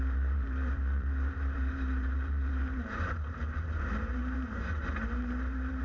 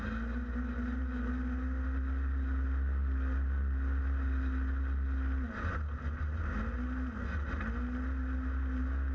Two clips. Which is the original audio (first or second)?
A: second